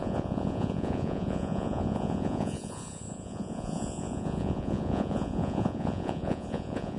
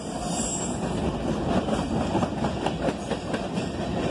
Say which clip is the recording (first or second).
second